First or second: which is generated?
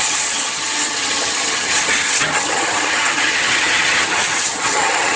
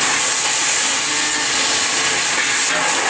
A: first